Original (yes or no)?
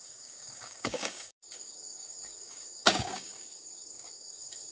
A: no